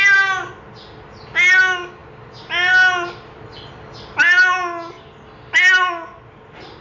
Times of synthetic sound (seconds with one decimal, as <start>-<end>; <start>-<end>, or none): none